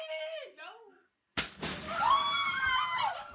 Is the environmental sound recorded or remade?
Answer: recorded